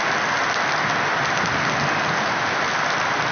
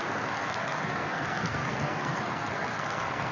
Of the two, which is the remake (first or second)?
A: second